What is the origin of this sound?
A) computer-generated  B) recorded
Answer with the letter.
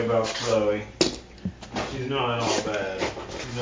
B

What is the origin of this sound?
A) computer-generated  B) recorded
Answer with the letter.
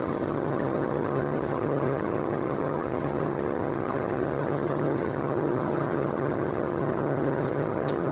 A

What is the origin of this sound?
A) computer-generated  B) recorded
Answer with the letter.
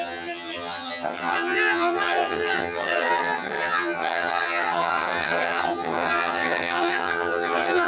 A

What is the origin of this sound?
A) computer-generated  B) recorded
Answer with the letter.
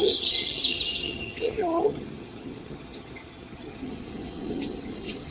A